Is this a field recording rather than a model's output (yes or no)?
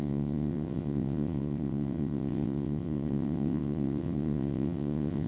no